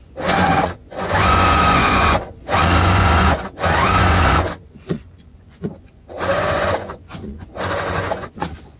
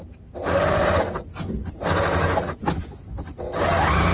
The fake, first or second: first